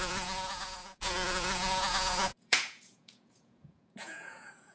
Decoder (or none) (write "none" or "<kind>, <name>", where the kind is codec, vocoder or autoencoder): vocoder, Vocos